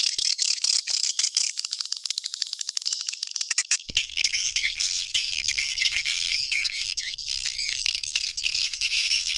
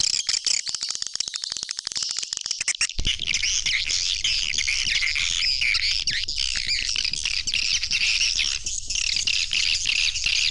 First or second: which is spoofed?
first